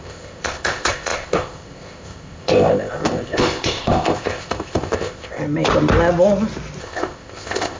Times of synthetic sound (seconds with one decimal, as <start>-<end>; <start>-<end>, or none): 0.0-5.4; 6.8-7.8